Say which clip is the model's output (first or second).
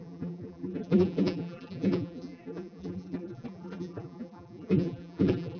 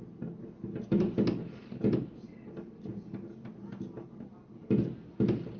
first